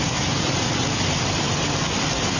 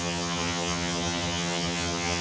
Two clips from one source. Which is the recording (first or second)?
first